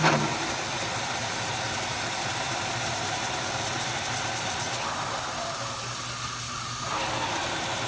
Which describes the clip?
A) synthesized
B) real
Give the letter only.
B